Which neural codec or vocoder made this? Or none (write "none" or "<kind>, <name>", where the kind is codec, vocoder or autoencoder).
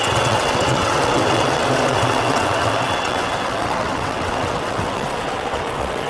vocoder, WaveNeXt